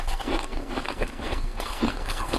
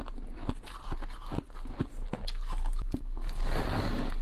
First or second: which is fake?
first